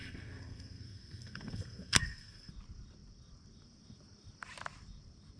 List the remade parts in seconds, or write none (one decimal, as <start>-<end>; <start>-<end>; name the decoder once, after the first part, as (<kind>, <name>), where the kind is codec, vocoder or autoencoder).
0.0-2.5 (codec, SNAC)